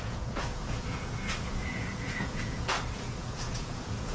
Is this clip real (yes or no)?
no